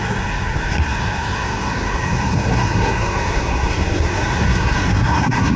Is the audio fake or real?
fake